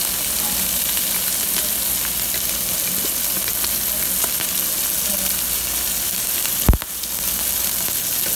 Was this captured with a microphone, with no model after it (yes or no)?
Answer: yes